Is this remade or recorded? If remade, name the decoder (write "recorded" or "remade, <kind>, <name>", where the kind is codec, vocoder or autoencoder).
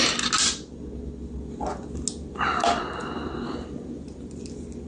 recorded